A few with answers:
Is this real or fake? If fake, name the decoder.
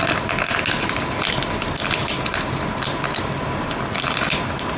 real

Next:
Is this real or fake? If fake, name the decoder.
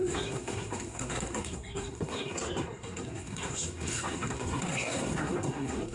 fake, codec, SNAC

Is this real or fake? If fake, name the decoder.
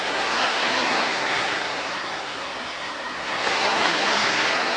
fake, codec, SNAC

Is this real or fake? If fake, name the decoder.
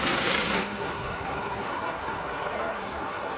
fake, codec, SNAC